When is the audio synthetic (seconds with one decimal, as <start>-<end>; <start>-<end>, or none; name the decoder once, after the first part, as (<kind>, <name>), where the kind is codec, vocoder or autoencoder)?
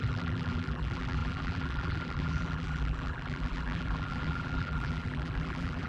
0.0-5.9 (vocoder, BigVGAN v2)